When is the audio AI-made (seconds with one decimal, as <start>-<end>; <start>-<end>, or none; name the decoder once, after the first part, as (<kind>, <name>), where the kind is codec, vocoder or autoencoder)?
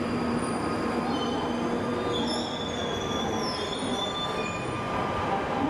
none